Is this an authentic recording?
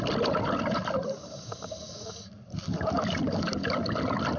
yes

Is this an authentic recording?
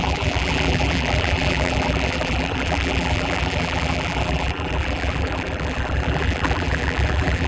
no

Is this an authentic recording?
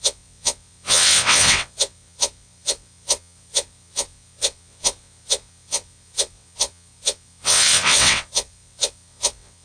no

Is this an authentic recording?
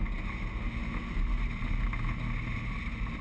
yes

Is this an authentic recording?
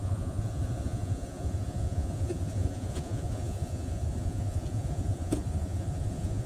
no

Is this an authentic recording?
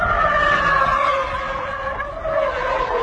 yes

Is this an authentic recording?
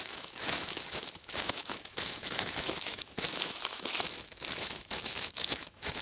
no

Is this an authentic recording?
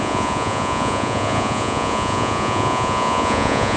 no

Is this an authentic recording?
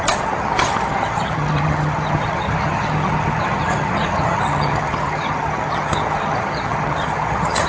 no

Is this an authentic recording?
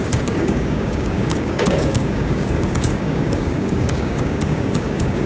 no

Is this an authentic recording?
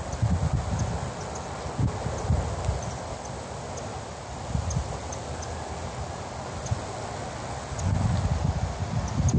yes